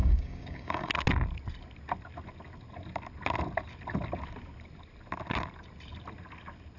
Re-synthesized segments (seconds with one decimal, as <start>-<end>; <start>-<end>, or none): 0.0-0.9